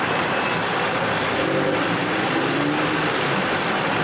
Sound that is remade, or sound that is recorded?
recorded